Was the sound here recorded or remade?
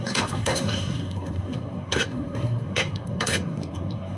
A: remade